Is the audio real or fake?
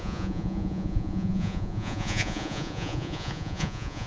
fake